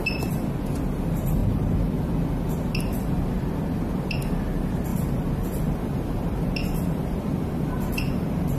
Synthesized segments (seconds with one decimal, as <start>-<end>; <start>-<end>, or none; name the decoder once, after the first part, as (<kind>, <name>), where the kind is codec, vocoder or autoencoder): 4.9-7.8 (vocoder, BigVGAN v2)